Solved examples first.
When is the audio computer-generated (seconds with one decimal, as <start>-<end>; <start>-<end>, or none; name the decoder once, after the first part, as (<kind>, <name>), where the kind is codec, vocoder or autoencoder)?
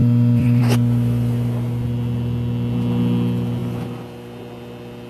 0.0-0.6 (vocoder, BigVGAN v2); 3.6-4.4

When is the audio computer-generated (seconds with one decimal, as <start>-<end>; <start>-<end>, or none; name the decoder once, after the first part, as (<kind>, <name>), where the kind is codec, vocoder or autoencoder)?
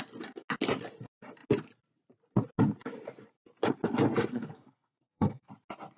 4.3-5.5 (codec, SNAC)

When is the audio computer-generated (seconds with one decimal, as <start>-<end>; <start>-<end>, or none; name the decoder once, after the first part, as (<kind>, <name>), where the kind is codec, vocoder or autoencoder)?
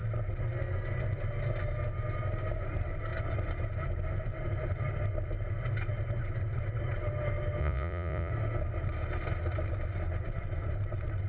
7.6-8.3 (vocoder, Vocos)